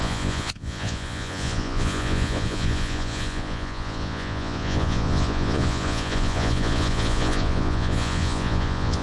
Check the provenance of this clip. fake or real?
fake